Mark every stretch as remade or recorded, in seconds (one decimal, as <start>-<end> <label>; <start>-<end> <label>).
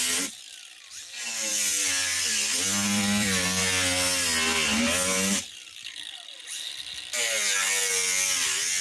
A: 0.0-1.5 recorded; 1.5-3.6 remade; 3.6-8.8 recorded